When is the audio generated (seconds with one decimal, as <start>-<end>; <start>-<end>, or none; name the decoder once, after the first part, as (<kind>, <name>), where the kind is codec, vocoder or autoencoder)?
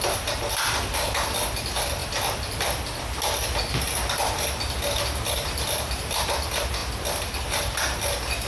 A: none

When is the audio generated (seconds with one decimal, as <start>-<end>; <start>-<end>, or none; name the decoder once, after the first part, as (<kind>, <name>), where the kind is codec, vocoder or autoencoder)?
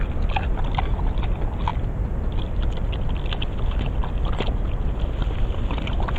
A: none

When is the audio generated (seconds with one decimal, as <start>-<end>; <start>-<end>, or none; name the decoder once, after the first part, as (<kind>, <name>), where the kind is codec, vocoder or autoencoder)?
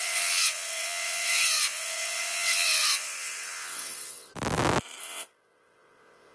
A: 0.0-4.3 (vocoder, WaveNeXt); 5.0-6.3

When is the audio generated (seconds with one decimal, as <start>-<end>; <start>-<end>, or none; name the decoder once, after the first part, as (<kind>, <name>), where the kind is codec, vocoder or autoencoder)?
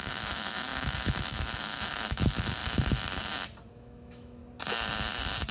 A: 0.0-2.6 (autoencoder, DAC-VAE); 3.7-4.4